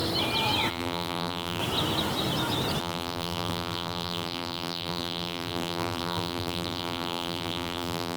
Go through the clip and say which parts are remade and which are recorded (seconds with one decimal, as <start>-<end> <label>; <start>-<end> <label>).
0.0-0.7 recorded; 0.7-1.6 remade; 1.6-2.8 recorded; 2.8-8.2 remade